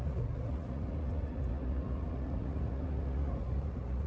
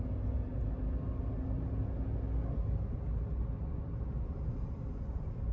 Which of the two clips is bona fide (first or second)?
second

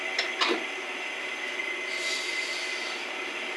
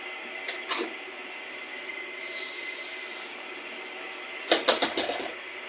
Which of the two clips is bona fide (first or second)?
first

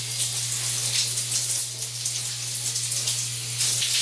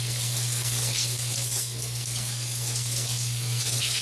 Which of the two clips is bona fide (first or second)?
first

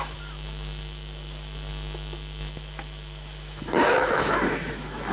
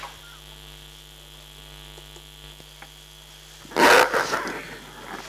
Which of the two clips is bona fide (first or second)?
second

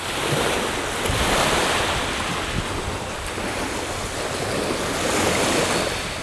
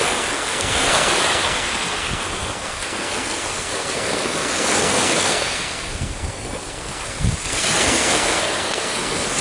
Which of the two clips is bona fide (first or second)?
first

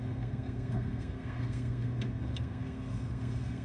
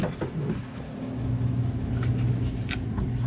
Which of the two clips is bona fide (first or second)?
second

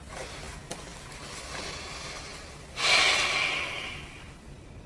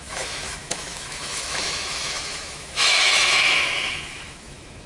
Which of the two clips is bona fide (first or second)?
first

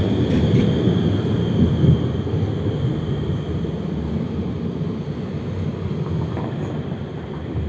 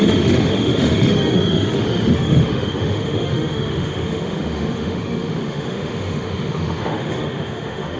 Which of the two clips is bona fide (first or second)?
first